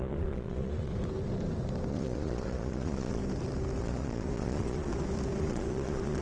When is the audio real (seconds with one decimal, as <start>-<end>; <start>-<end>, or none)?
0.9-1.9; 3.2-3.8; 4.9-5.4